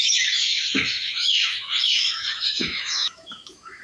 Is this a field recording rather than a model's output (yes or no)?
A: no